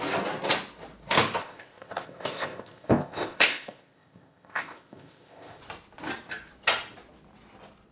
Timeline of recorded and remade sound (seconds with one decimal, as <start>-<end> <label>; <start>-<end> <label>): 0.0-1.4 recorded; 1.4-5.6 remade; 5.6-7.9 recorded